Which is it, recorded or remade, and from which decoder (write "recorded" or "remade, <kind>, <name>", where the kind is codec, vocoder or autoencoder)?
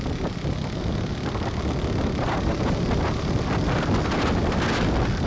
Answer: recorded